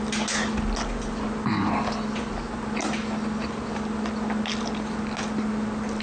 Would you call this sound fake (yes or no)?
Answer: no